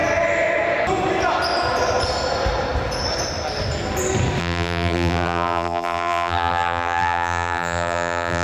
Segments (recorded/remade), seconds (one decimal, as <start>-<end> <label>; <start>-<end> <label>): 0.0-4.4 recorded; 4.4-8.4 remade